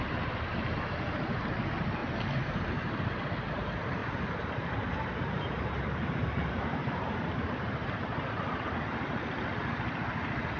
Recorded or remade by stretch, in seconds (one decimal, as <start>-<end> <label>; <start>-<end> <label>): 0.0-2.0 recorded; 2.0-3.1 remade; 3.1-4.0 recorded; 4.0-8.6 remade; 8.6-10.6 recorded